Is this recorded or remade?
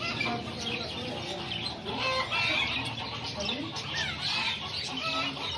recorded